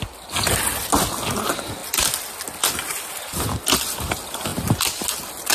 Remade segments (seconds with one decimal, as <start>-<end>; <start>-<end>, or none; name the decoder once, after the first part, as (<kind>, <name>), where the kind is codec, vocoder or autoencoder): none